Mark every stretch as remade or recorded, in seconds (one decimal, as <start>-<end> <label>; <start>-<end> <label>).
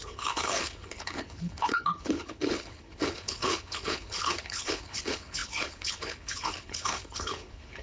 0.0-7.8 remade